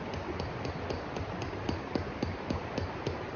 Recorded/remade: recorded